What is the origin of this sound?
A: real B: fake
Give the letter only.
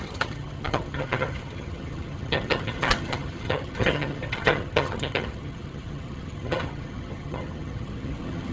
B